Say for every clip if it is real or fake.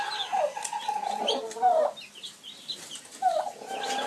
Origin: real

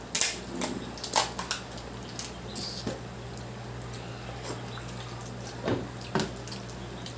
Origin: real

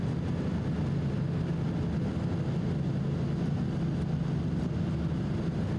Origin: real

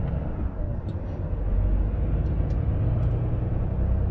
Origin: real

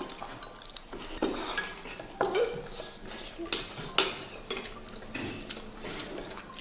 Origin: real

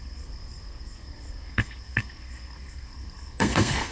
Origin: fake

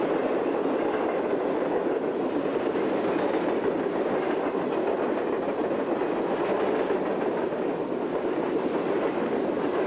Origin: real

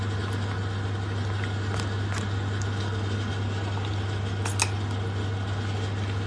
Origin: real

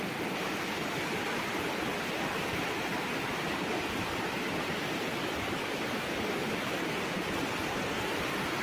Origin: real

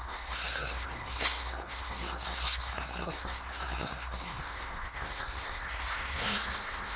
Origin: fake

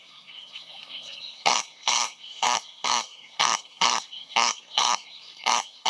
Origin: fake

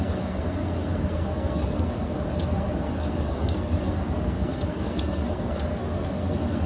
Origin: fake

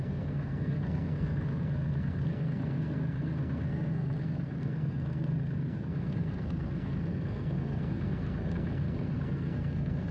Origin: fake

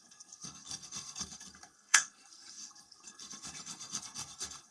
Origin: fake